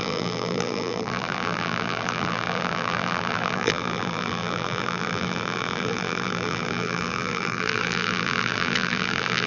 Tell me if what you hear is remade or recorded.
remade